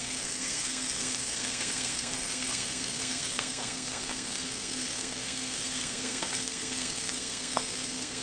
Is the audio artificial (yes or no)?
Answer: yes